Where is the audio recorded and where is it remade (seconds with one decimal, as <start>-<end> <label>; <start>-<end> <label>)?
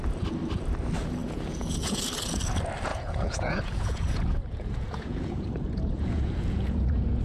0.0-1.2 recorded; 1.2-2.0 remade; 2.0-2.9 recorded; 2.9-7.2 remade